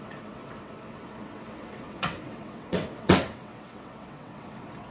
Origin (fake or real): fake